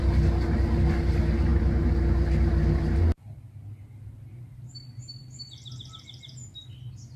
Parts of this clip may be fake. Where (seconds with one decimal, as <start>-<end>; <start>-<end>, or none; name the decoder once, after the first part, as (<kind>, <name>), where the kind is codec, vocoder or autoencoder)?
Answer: none